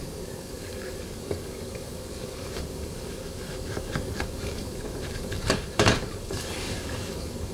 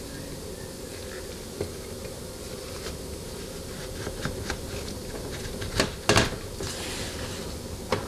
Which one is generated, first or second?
first